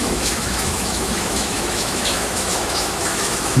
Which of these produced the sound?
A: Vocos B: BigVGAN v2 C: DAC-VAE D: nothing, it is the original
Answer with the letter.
C